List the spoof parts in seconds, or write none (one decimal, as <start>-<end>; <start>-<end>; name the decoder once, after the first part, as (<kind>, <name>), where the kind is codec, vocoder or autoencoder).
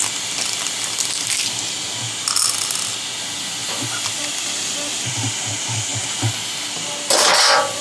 none